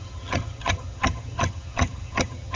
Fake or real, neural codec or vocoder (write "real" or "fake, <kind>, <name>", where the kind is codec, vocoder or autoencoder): fake, vocoder, HiFi-GAN